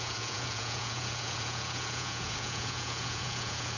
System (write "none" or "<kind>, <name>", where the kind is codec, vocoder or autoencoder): vocoder, Vocos